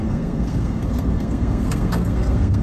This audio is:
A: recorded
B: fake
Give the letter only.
B